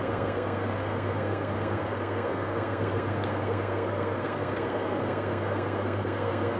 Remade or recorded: remade